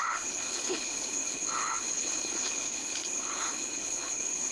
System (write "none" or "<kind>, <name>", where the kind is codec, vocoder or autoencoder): codec, HILCodec